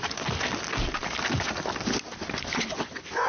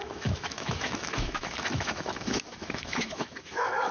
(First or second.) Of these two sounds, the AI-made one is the second